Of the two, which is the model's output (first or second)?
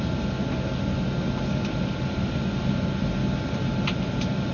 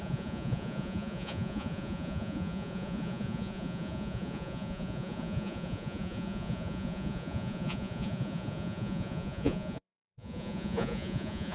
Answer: second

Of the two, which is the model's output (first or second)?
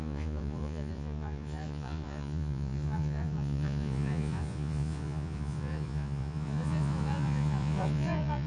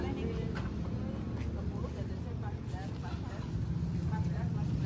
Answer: first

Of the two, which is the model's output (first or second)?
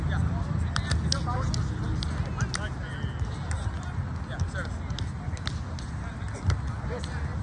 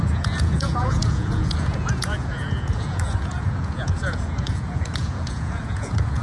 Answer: second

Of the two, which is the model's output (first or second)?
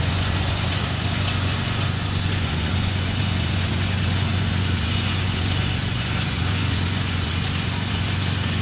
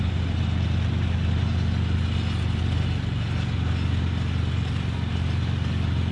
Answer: first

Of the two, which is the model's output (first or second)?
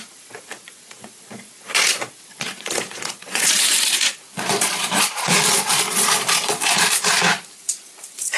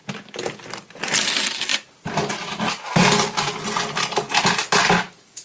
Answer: first